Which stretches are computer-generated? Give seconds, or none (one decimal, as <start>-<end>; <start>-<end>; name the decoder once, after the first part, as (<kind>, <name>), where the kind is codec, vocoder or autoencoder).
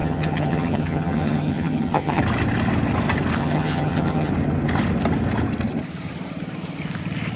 0.0-2.2 (vocoder, HiFi-GAN); 3.4-4.3